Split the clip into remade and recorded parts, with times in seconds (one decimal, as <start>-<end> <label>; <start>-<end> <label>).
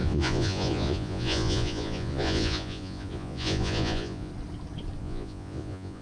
0.0-4.3 remade; 4.3-5.0 recorded; 5.0-6.0 remade